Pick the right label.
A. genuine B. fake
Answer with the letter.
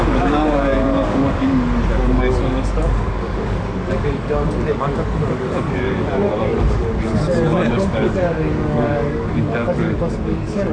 B